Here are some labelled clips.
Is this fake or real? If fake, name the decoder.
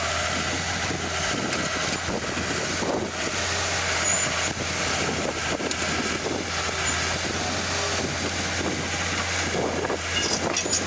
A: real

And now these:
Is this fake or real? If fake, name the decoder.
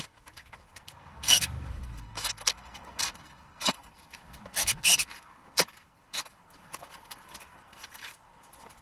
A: fake, codec, SNAC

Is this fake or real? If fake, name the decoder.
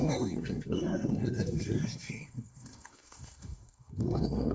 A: fake, codec, SNAC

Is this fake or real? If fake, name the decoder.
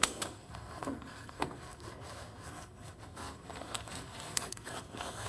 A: fake, codec, SNAC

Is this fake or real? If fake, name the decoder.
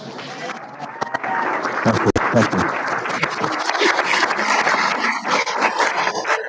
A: real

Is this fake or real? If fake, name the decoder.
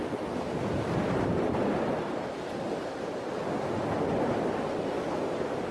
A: real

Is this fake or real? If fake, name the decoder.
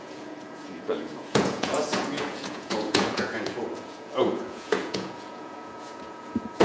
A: fake, vocoder, Vocos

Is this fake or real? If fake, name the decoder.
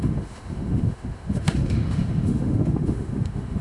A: fake, autoencoder, DAC-VAE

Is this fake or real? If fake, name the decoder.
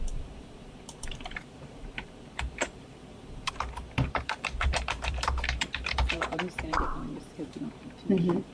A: fake, vocoder, BigVGAN v2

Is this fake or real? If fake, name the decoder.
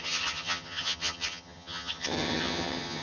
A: fake, vocoder, HiFi-GAN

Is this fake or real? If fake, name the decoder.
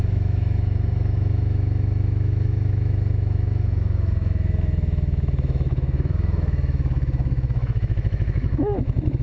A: fake, autoencoder, DAC-VAE